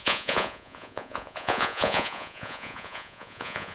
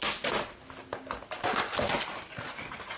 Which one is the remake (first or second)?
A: first